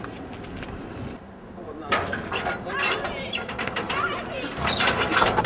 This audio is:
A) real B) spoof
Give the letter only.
A